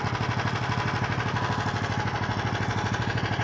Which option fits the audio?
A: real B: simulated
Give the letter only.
A